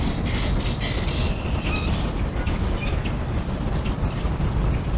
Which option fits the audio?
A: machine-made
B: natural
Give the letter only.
B